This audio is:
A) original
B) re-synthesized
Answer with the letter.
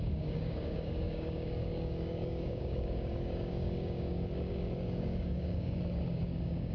B